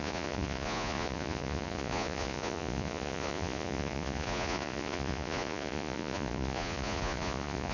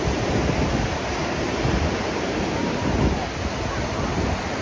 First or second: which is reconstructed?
first